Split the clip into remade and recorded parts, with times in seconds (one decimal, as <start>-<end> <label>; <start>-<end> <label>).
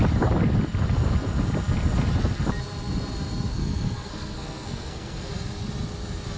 0.0-3.5 recorded; 3.5-5.3 remade; 5.3-6.4 recorded